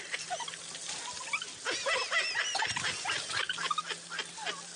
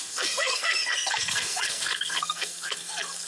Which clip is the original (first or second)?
first